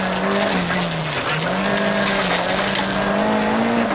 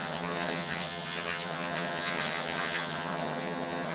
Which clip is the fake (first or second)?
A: second